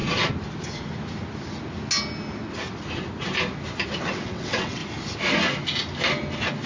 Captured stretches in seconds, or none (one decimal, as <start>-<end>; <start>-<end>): 0.0-4.0; 4.8-6.7